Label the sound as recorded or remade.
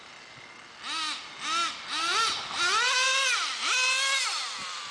recorded